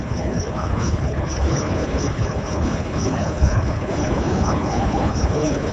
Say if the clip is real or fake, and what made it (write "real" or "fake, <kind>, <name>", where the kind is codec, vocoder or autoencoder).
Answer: fake, codec, HILCodec